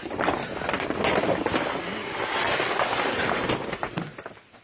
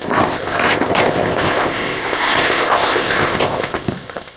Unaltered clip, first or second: first